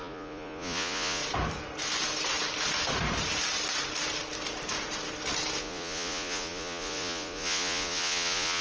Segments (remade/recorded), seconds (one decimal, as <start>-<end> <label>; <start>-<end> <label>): 0.0-1.2 remade; 1.2-5.6 recorded; 5.6-8.6 remade